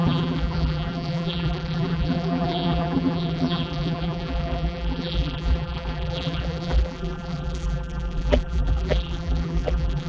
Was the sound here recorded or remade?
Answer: remade